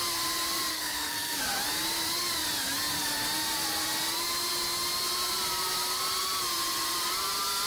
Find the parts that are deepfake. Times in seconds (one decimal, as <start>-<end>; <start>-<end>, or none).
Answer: 0.7-1.4